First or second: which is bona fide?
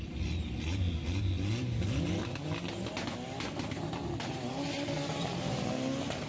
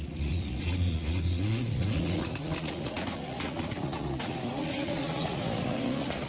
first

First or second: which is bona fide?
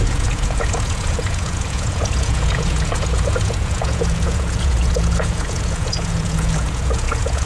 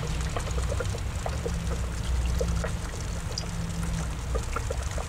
second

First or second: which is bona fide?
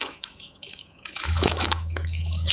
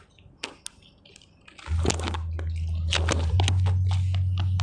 second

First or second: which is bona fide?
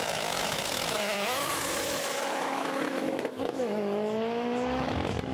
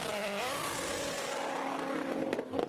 second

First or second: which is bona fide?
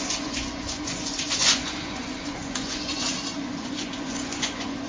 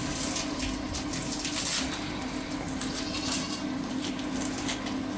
second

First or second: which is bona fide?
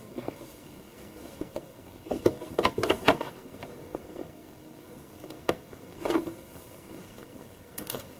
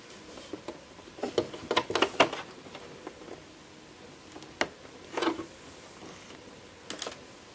second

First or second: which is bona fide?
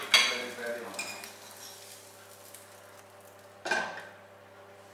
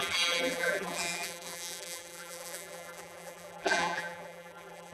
first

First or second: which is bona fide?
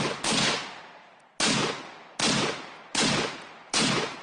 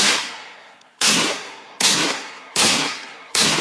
first